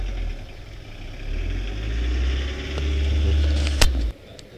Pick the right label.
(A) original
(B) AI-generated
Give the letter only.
A